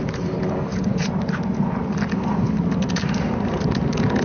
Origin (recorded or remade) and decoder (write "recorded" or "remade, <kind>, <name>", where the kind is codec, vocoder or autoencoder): remade, vocoder, BigVGAN v2